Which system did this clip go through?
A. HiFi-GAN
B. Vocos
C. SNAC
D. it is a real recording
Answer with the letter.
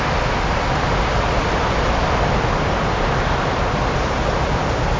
D